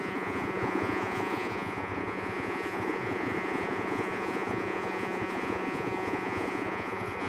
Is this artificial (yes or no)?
yes